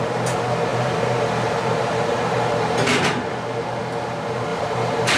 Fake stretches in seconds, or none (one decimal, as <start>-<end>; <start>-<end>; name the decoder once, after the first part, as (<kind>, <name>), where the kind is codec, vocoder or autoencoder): 0.7-3.8 (vocoder, BigVGAN v2); 4.5-5.2